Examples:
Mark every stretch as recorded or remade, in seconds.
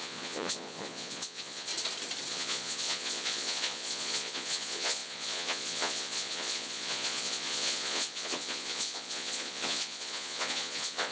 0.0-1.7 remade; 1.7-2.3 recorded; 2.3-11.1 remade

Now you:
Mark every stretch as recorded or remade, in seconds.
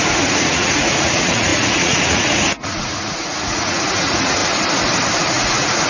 0.0-4.4 remade; 4.4-5.3 recorded; 5.3-5.9 remade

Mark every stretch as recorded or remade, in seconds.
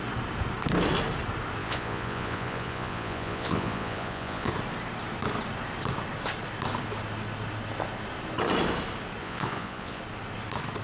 0.0-1.6 recorded; 1.6-4.5 remade; 4.5-9.2 recorded; 9.2-10.0 remade; 10.0-10.8 recorded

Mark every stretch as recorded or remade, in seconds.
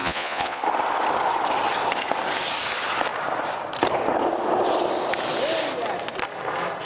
0.0-0.6 remade; 0.6-6.9 recorded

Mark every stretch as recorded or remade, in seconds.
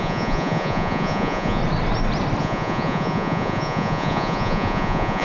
0.0-1.6 remade; 1.6-2.4 recorded; 2.4-5.2 remade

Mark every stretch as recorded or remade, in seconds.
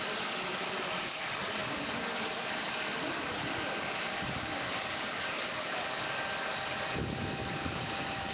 0.0-8.3 recorded